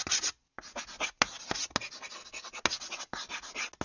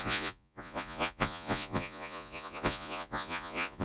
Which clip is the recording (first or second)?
first